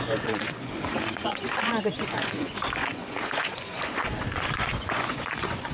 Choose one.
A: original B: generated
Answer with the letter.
B